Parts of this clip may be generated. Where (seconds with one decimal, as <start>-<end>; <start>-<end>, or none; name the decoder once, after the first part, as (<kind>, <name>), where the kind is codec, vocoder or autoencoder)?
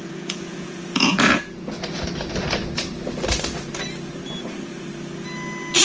0.0-1.8 (vocoder, Vocos)